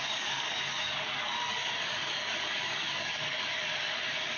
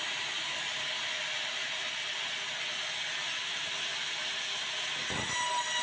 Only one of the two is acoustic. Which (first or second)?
second